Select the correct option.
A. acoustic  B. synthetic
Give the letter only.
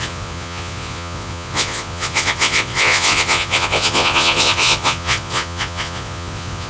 B